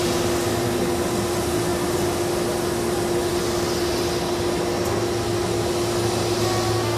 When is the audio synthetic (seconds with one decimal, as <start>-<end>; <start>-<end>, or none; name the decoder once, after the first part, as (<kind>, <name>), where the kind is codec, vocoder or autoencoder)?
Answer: none